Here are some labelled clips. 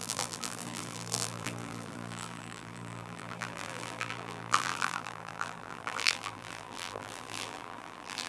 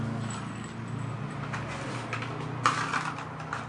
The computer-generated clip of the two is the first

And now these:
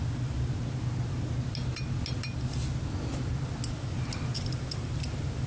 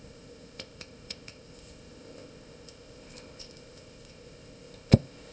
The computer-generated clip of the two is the second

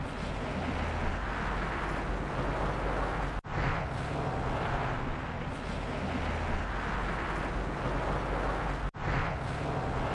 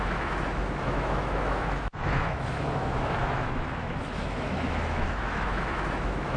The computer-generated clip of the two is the second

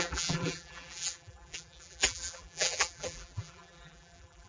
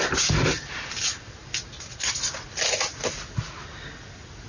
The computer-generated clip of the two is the first